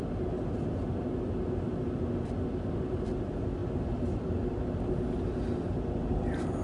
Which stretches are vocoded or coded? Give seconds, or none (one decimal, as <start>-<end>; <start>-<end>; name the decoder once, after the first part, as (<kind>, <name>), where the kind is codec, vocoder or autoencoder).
none